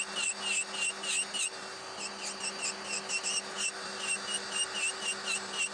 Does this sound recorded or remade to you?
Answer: recorded